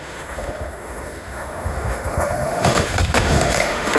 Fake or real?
fake